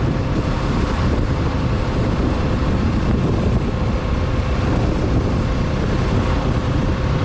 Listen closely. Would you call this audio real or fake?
fake